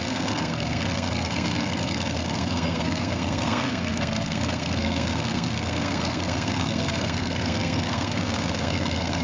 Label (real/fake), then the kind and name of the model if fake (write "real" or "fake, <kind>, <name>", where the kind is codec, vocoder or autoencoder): fake, codec, SNAC